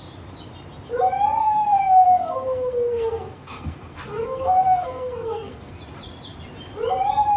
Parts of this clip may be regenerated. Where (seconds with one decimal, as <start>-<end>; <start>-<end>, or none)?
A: 1.4-5.8